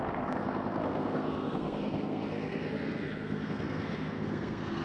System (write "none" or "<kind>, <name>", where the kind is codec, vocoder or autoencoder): codec, SNAC